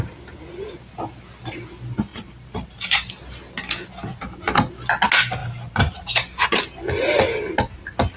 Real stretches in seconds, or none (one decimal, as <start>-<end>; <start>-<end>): 0.0-2.1; 3.1-5.4; 6.6-8.2